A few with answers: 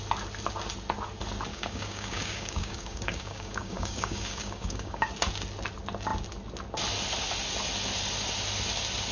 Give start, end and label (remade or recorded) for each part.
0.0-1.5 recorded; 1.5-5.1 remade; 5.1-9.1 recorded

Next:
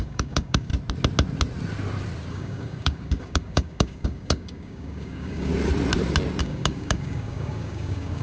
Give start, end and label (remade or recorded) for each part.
0.0-0.7 remade; 0.7-2.3 recorded; 2.3-5.5 remade; 5.5-6.4 recorded; 6.4-8.2 remade